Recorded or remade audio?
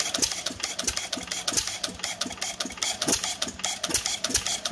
recorded